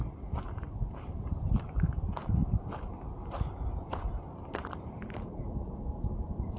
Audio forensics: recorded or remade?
remade